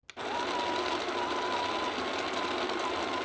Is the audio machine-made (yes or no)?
no